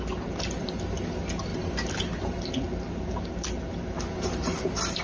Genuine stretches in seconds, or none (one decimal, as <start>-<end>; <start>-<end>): 0.0-5.0